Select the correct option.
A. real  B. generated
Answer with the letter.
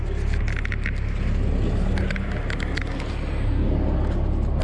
A